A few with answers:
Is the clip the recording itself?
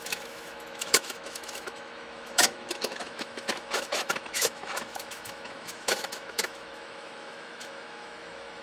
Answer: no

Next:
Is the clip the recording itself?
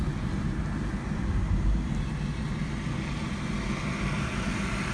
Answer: yes